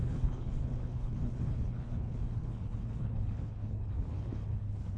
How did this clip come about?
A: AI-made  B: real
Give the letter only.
A